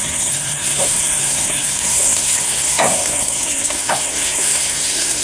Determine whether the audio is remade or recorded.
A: remade